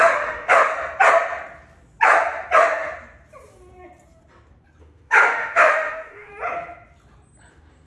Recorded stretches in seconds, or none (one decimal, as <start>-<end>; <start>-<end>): 0.7-4.8; 6.3-7.5